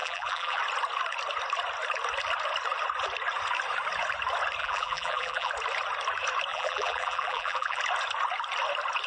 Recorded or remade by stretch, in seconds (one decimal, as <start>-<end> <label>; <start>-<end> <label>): 0.0-0.6 remade; 0.6-4.6 recorded; 4.6-5.5 remade; 5.5-6.5 recorded; 6.5-7.8 remade; 7.8-9.1 recorded